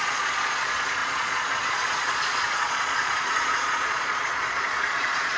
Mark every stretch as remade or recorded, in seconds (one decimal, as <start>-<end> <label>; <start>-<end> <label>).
0.0-5.4 remade